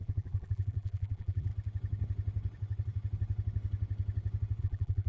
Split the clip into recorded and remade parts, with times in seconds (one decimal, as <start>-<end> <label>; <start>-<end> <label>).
0.0-1.5 remade; 1.5-4.6 recorded; 4.6-5.1 remade